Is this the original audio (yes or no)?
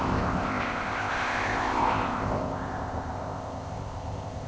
no